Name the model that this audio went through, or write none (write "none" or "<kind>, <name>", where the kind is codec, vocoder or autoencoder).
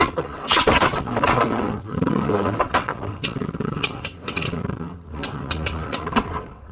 vocoder, WaveNeXt